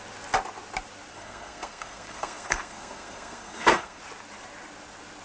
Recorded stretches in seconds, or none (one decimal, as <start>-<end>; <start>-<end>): 0.0-1.1; 4.0-5.2